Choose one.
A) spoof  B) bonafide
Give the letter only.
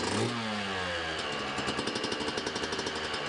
B